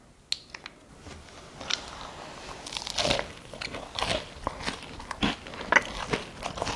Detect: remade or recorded recorded